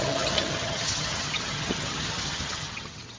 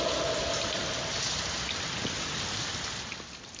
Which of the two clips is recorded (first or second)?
second